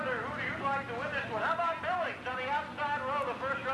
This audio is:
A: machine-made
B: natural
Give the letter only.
B